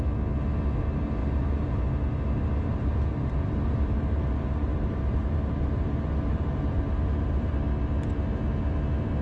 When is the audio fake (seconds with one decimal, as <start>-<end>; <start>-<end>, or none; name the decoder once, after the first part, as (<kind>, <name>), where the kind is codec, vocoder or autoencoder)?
1.2-1.8 (vocoder, BigVGAN v2); 2.7-7.5